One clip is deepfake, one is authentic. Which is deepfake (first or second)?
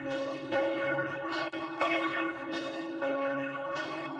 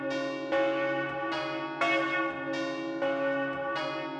first